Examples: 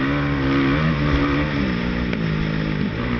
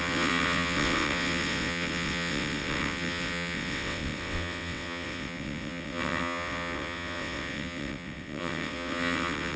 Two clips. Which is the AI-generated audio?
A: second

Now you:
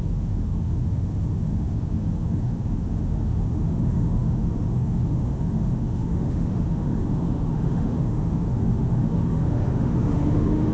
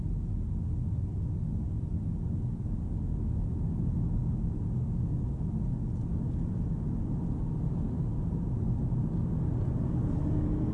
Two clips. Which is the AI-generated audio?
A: first